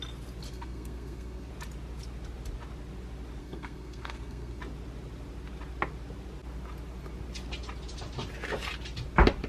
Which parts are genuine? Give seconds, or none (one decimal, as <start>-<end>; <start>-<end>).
0.0-0.5; 1.5-3.4; 4.6-9.5